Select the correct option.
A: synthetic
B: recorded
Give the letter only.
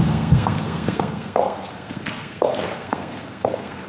A